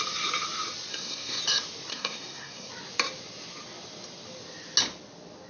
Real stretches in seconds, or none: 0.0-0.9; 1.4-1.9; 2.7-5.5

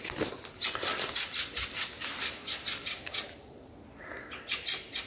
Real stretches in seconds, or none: 0.0-5.1

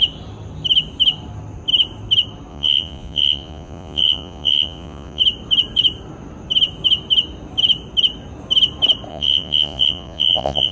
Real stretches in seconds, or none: 0.0-2.5; 5.2-9.1